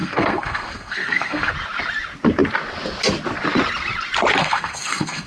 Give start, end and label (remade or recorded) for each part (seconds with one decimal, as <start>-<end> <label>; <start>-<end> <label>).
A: 0.0-1.5 remade; 1.5-4.4 recorded; 4.4-5.3 remade